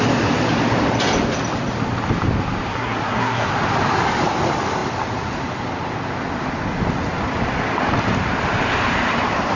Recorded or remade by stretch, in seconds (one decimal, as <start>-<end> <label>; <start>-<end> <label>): 0.0-2.7 recorded; 2.7-3.5 remade; 3.5-9.6 recorded